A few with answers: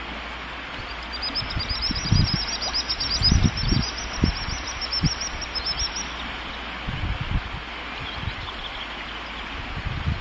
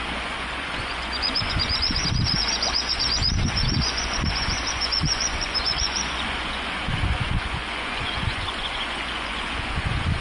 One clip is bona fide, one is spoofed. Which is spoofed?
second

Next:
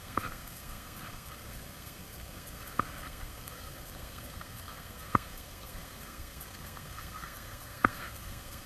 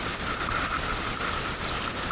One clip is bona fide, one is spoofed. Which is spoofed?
first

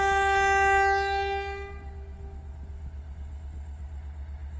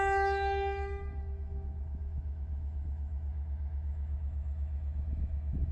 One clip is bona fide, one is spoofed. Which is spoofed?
second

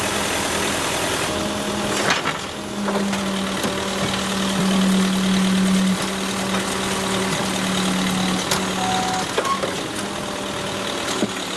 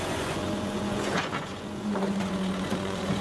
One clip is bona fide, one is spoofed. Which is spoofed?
second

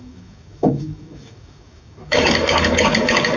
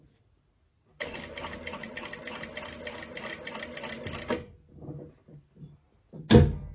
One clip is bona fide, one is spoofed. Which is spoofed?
first